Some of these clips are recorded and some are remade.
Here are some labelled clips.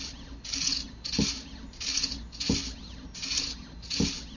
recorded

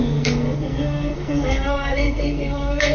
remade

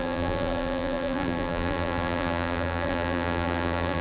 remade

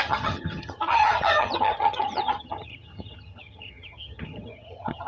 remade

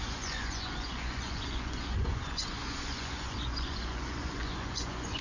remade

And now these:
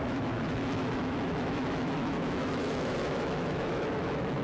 remade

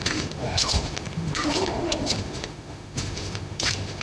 remade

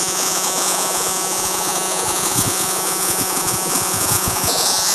remade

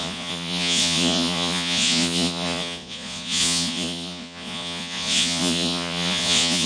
remade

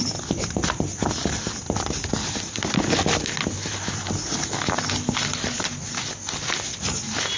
recorded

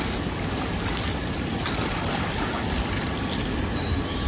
recorded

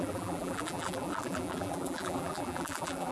remade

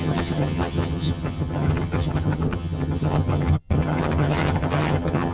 remade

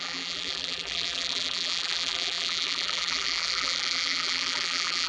remade